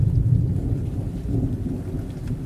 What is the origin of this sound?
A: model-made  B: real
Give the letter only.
B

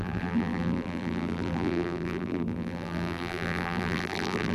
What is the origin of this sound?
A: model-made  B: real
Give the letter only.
A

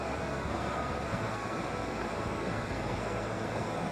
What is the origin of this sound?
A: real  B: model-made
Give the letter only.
B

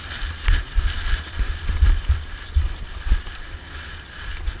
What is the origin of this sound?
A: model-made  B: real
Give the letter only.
A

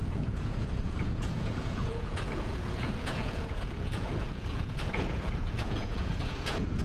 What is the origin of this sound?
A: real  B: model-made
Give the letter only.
B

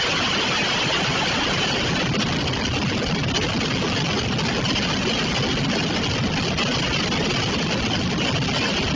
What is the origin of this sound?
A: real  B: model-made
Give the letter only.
A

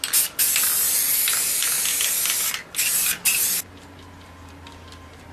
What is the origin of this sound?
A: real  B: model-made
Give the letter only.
A